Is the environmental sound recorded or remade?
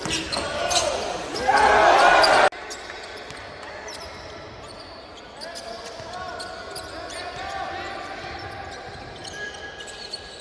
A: recorded